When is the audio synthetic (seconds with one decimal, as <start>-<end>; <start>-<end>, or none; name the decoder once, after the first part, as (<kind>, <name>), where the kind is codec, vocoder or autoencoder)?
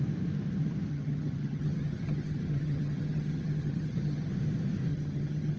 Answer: 0.9-4.3 (vocoder, HiFi-GAN); 4.9-5.6